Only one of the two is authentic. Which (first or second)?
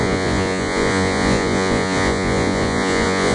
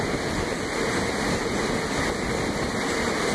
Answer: second